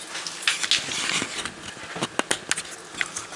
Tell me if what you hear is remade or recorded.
recorded